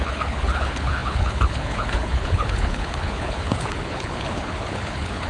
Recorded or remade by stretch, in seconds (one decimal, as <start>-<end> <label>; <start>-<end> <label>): 0.0-5.3 remade

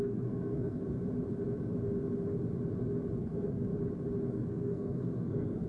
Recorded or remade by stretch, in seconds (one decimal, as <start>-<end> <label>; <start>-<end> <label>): 0.0-0.8 remade; 0.8-3.2 recorded; 3.2-3.7 remade; 3.7-4.3 recorded; 4.3-5.7 remade

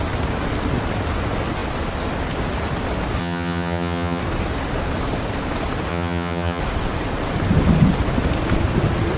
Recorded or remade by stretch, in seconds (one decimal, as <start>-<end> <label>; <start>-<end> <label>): 0.0-3.2 recorded; 3.2-4.2 remade; 4.2-5.9 recorded; 5.9-6.6 remade; 6.6-9.2 recorded

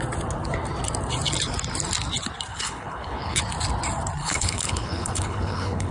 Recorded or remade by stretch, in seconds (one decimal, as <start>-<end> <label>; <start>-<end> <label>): 0.0-2.5 recorded; 2.5-3.4 remade; 3.4-4.2 recorded; 4.2-5.9 remade

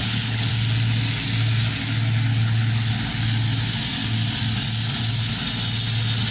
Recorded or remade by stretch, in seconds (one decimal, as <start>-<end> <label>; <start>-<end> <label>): 0.0-0.5 remade; 0.5-2.3 recorded; 2.3-2.9 remade; 2.9-6.3 recorded

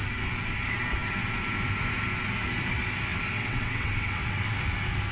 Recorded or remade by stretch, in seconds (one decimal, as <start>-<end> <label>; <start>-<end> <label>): 0.0-3.1 recorded; 3.1-4.5 remade; 4.5-5.1 recorded

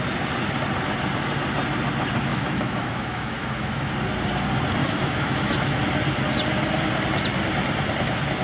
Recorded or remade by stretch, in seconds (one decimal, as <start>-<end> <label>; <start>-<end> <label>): 0.0-2.3 recorded; 2.3-3.9 remade; 3.9-4.8 recorded; 4.8-5.8 remade; 5.8-8.4 recorded